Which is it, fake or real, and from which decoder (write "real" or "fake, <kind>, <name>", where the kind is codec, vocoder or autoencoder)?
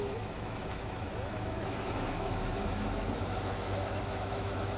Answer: fake, autoencoder, DAC-VAE